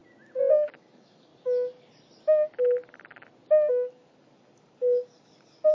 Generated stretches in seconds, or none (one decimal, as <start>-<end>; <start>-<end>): 0.5-1.3; 3.7-5.7